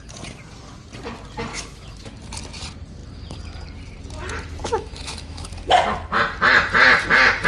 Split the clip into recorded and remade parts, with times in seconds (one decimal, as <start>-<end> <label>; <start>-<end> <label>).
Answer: 0.0-1.5 recorded; 1.5-2.1 remade; 2.1-4.6 recorded; 4.6-5.5 remade; 5.5-7.5 recorded